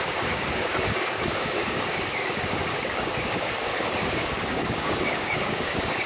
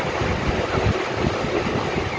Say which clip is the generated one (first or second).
first